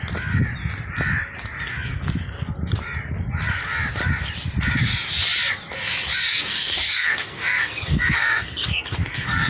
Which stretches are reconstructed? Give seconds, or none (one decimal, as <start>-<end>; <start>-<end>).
6.3-9.5